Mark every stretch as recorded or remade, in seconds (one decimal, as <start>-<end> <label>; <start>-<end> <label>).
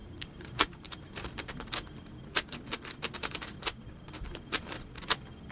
0.0-1.3 remade; 1.3-5.5 recorded